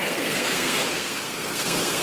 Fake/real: fake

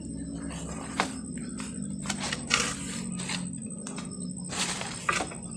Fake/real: real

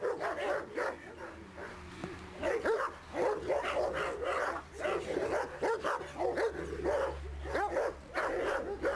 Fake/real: real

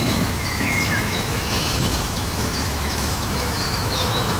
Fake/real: fake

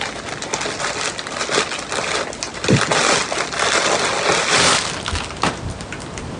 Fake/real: real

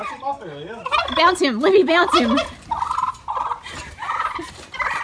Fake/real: real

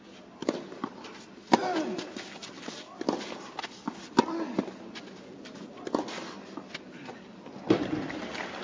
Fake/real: real